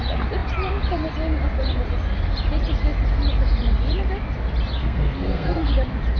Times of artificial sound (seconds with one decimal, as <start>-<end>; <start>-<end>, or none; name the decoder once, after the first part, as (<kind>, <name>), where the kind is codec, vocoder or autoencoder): 4.8-5.7 (codec, SNAC)